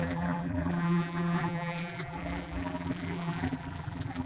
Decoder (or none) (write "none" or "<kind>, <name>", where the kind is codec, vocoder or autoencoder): vocoder, BigVGAN v2